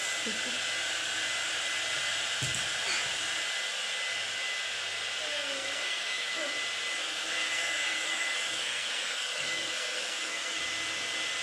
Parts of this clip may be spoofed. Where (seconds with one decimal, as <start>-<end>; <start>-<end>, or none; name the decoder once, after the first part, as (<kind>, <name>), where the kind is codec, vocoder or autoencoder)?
5.3-6.5 (codec, SNAC); 7.0-10.6